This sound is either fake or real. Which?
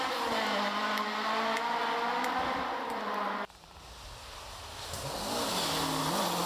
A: real